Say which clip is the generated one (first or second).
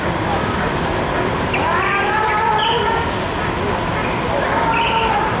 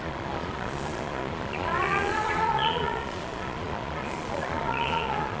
second